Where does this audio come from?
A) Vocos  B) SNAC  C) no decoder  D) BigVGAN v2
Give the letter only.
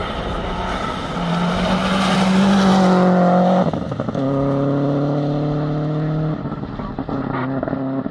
C